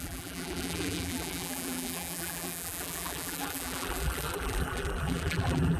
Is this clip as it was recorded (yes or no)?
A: no